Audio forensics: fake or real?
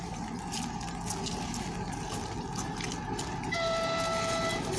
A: real